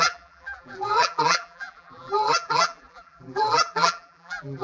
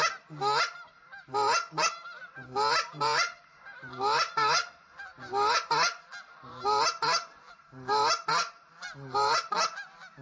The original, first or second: second